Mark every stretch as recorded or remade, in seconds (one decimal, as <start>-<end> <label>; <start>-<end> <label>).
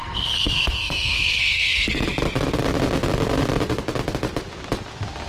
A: 0.0-2.1 remade; 2.1-5.3 recorded